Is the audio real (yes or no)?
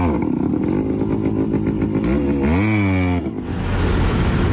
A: yes